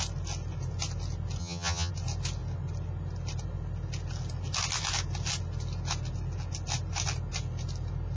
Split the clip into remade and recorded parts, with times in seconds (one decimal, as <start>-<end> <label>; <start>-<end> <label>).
0.0-1.4 recorded; 1.4-1.9 remade; 1.9-8.2 recorded